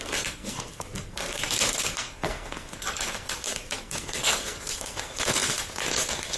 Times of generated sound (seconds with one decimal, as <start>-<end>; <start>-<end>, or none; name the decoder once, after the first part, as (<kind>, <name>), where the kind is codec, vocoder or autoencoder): 0.0-6.4 (codec, SNAC)